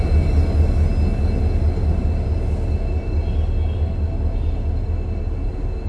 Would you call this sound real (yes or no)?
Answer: yes